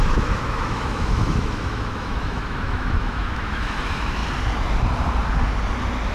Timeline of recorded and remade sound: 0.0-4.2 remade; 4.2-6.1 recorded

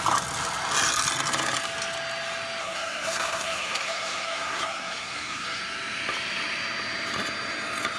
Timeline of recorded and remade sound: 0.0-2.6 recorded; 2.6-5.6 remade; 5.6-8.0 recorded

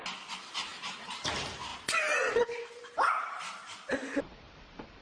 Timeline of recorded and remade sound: 0.0-0.7 recorded; 0.7-1.2 remade; 1.2-1.7 recorded; 1.7-5.0 remade